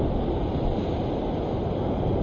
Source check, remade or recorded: recorded